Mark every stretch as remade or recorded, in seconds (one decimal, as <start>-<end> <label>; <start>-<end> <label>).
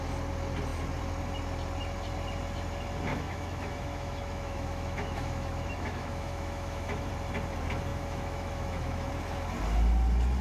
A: 0.0-3.1 recorded; 3.1-7.1 remade; 7.1-7.9 recorded; 7.9-9.1 remade; 9.1-10.4 recorded